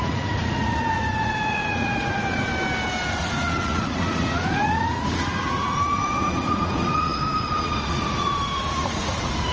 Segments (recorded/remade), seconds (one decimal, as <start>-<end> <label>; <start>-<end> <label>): 0.0-2.5 remade; 2.5-3.1 recorded; 3.1-9.5 remade